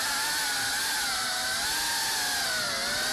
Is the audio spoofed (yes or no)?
no